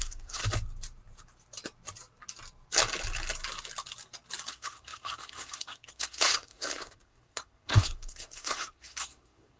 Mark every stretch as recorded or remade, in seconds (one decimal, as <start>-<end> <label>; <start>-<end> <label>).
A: 0.0-0.4 remade; 0.4-4.5 recorded; 4.5-9.6 remade